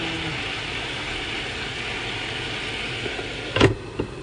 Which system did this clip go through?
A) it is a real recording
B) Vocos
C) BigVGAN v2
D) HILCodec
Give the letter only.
A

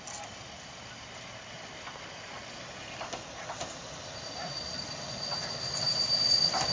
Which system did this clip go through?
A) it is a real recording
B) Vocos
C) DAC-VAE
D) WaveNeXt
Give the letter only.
A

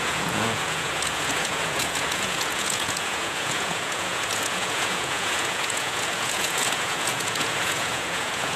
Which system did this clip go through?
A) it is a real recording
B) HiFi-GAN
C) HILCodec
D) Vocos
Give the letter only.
D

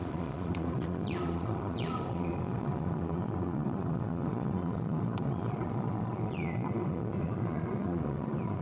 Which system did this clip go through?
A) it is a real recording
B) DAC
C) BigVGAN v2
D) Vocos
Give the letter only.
D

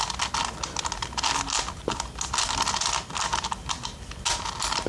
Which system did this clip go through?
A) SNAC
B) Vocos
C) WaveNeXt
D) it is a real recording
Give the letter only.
D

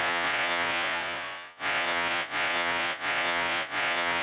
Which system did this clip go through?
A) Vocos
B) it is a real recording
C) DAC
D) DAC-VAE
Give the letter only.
A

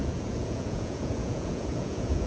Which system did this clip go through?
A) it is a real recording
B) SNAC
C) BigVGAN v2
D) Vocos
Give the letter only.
D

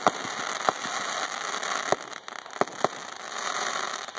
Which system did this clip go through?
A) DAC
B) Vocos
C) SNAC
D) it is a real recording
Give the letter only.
D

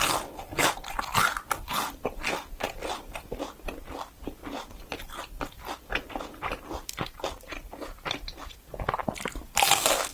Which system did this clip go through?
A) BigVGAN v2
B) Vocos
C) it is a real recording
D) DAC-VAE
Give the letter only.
C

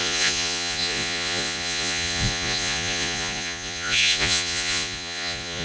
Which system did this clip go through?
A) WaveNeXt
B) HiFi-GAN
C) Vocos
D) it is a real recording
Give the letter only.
C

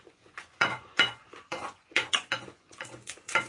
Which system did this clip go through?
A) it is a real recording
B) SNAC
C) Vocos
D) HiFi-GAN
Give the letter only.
C